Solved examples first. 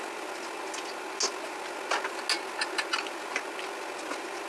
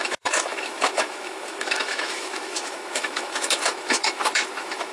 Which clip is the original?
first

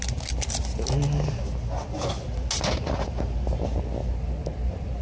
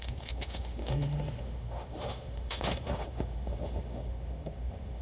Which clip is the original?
first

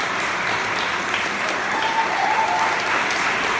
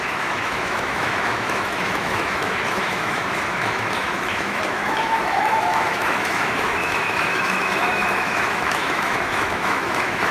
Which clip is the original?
first